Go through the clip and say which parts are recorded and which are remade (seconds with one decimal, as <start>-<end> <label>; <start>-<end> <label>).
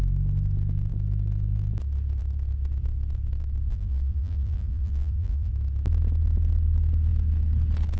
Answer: 0.0-3.7 recorded; 3.7-5.5 remade; 5.5-8.0 recorded